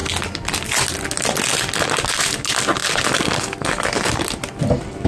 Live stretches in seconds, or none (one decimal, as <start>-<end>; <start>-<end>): 0.0-5.1